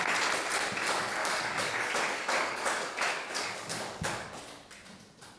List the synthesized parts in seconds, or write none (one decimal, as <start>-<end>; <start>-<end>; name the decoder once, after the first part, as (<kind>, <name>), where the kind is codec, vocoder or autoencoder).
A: 1.2-4.4 (codec, DAC)